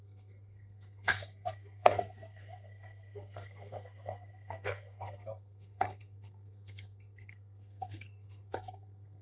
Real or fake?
fake